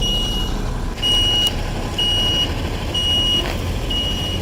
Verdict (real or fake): real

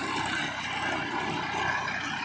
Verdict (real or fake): real